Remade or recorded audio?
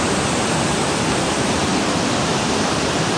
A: remade